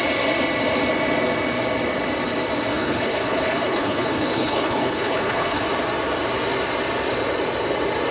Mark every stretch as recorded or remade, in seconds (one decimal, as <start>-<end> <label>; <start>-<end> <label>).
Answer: 0.0-2.7 recorded; 2.7-5.6 remade; 5.6-8.1 recorded